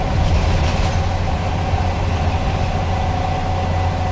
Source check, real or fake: real